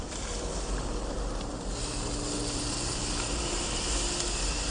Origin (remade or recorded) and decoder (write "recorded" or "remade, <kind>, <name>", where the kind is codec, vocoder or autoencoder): recorded